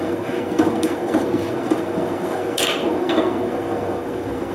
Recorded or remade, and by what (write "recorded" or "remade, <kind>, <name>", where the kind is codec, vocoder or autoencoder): remade, codec, SNAC